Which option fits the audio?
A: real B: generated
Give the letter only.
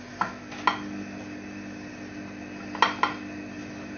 A